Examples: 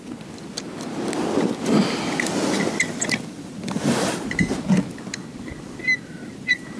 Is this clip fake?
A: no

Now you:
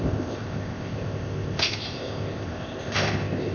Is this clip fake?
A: yes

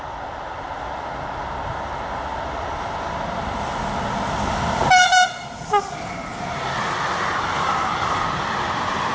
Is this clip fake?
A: no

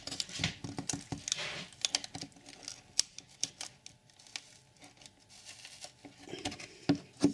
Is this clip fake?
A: no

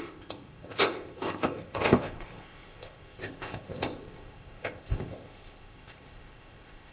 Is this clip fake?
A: yes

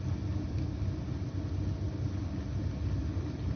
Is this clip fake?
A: no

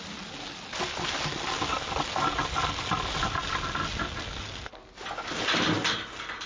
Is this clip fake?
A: no